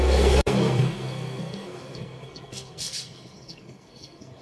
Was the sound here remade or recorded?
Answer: remade